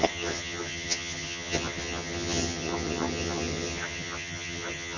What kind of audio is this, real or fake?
fake